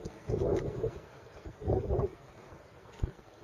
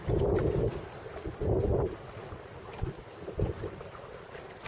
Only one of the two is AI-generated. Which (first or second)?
first